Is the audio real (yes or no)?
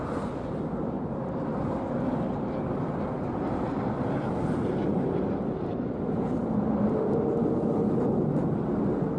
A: yes